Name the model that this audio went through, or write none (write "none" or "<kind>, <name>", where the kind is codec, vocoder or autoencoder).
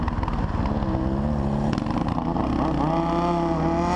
none